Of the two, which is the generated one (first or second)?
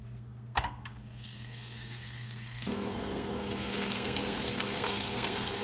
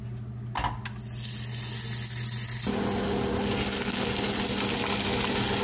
first